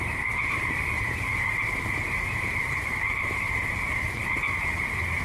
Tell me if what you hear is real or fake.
fake